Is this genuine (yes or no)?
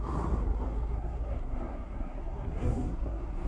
no